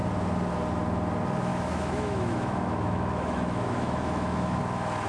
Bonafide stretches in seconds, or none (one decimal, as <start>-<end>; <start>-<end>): 0.0-1.5; 4.6-5.1